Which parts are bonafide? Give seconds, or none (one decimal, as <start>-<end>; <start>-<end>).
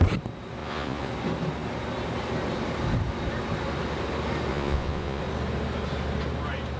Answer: 0.0-0.6; 1.1-4.5; 5.2-6.8